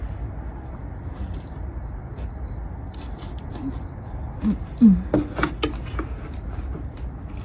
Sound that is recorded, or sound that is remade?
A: recorded